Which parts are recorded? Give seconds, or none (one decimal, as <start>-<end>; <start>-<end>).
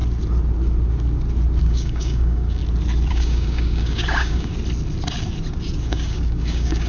0.0-1.6; 2.6-3.1; 4.5-5.9